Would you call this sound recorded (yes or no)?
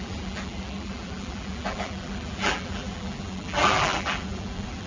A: no